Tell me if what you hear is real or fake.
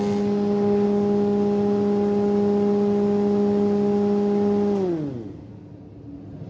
real